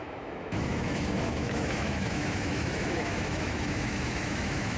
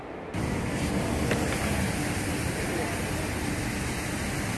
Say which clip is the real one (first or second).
second